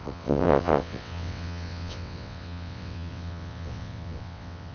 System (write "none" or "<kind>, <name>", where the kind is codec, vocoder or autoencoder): vocoder, WaveNeXt